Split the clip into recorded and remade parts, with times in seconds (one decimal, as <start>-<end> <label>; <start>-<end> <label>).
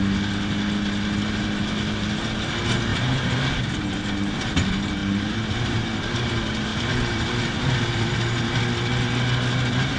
0.0-2.9 recorded; 2.9-4.4 remade; 4.4-5.0 recorded; 5.0-6.3 remade; 6.3-6.7 recorded; 6.7-8.6 remade; 8.6-10.0 recorded